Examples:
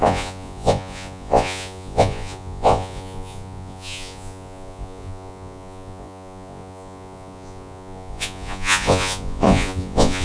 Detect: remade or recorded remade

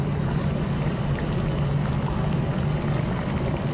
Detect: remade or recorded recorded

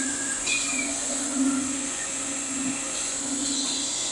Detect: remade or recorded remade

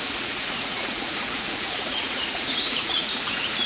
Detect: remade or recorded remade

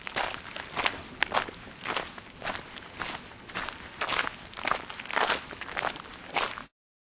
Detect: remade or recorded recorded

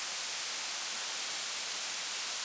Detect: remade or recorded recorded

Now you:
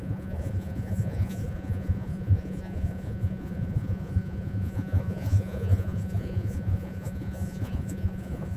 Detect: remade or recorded remade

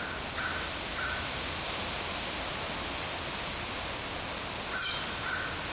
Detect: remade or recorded recorded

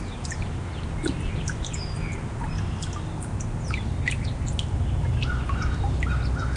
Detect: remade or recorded recorded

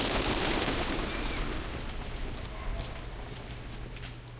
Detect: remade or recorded recorded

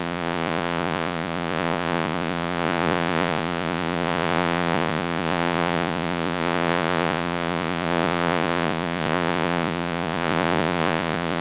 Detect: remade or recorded remade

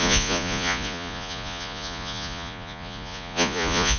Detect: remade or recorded remade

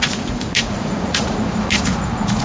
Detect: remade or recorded remade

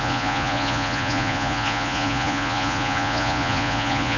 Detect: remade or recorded remade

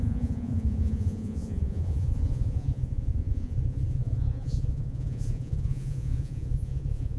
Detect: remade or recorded remade